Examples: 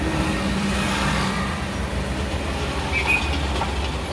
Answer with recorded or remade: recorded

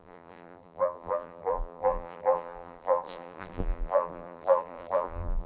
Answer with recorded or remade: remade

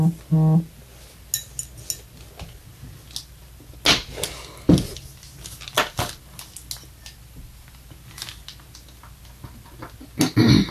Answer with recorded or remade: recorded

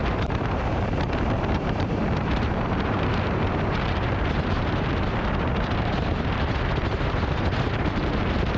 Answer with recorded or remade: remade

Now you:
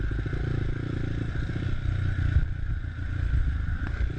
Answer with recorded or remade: recorded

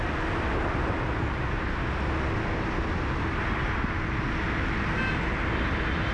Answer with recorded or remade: recorded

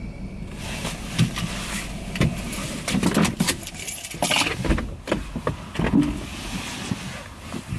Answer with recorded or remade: recorded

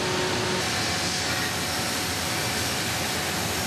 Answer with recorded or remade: recorded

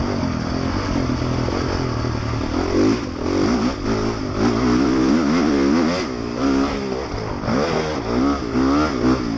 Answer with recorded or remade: recorded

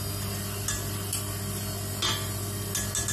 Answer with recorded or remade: recorded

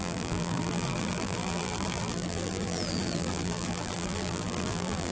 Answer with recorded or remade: remade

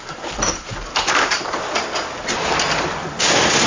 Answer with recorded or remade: remade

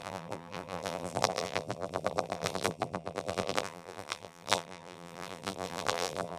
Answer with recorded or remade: remade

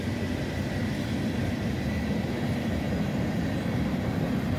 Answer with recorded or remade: recorded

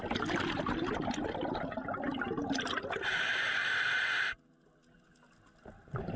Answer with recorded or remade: recorded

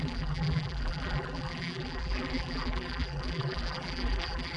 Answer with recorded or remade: remade